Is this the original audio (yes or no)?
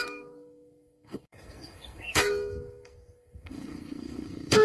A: no